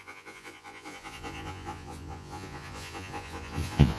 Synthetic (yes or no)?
yes